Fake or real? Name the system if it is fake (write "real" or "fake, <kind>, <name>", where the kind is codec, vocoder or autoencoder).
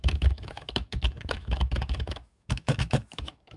fake, autoencoder, DAC-VAE